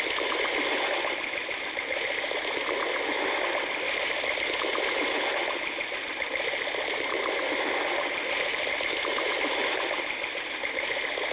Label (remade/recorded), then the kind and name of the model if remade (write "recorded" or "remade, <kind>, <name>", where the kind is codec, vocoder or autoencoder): recorded